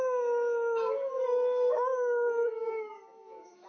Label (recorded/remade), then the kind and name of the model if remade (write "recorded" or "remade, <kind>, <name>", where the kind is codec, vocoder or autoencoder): remade, codec, DAC